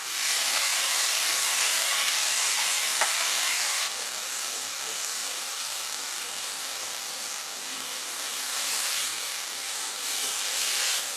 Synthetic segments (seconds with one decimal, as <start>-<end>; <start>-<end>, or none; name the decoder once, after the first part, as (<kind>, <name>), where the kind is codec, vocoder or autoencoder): 0.0-11.2 (codec, DAC)

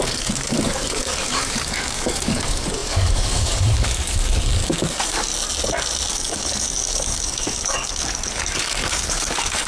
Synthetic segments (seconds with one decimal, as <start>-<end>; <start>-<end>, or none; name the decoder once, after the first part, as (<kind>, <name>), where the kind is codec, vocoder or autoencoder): 0.0-5.3 (codec, DAC); 6.1-9.7